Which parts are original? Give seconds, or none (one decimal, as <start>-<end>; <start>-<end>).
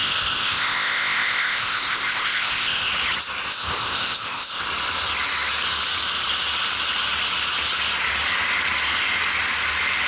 2.9-3.5; 4.6-10.1